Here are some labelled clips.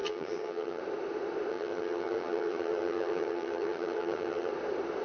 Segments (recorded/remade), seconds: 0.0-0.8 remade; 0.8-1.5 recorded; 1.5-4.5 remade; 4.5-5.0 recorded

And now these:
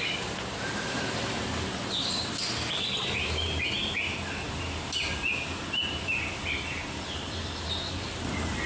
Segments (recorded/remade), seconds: 0.0-8.7 recorded

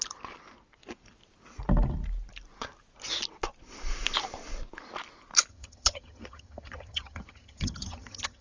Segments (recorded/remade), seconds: 0.0-5.5 recorded; 5.5-8.4 remade

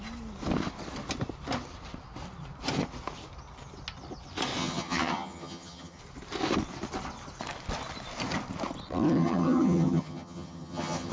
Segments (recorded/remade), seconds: 0.0-4.6 recorded; 4.6-6.0 remade; 6.0-9.2 recorded; 9.2-11.1 remade

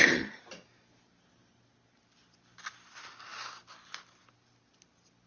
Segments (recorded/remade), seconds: 0.0-5.3 recorded

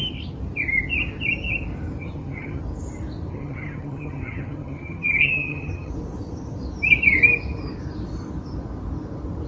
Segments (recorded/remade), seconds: 0.0-2.0 recorded; 2.0-2.6 remade; 2.6-3.3 recorded; 3.3-5.9 remade; 5.9-9.5 recorded

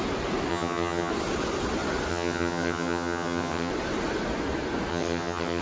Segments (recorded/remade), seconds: 0.0-0.5 recorded; 0.5-1.1 remade; 1.1-2.1 recorded; 2.1-3.7 remade; 3.7-4.9 recorded; 4.9-5.6 remade

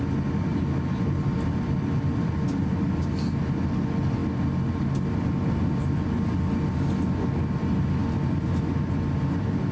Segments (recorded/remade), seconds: 0.0-9.7 recorded